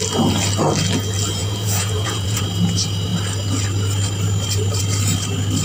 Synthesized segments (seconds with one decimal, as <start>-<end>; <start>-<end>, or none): 1.4-2.4